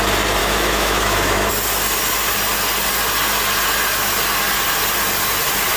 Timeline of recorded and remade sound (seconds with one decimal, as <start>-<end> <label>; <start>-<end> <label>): 0.0-0.4 recorded; 0.4-1.5 remade; 1.5-5.8 recorded